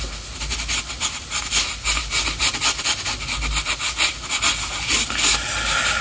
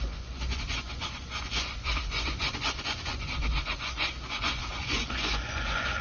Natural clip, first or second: first